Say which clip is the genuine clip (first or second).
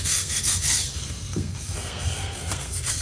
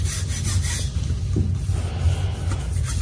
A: second